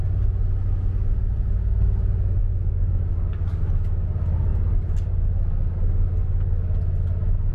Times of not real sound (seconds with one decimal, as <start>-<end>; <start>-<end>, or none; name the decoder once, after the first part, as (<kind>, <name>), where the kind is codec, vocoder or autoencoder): 2.4-3.6 (codec, DAC)